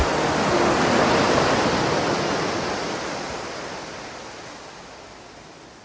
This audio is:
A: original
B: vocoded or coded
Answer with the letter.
A